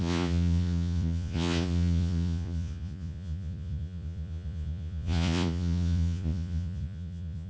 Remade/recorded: remade